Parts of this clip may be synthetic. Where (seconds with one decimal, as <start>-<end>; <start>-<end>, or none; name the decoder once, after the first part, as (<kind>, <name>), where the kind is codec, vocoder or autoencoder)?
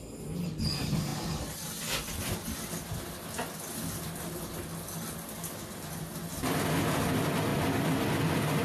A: none